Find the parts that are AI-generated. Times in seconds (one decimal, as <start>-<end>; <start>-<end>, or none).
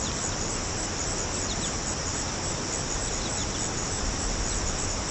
none